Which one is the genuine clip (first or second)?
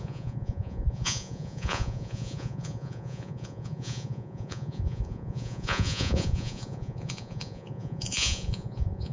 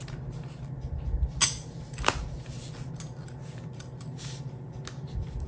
second